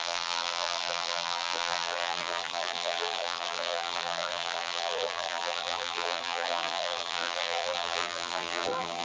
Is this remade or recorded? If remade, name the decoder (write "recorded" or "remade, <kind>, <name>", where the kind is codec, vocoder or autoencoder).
remade, vocoder, BigVGAN v2